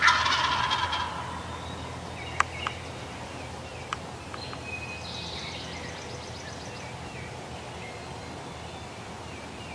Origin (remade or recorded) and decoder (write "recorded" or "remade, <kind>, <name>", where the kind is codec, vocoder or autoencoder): recorded